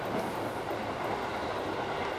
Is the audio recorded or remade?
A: recorded